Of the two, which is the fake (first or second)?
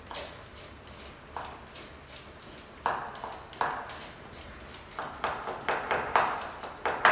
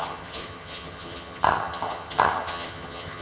second